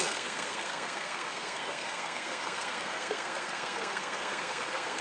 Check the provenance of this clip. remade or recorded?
remade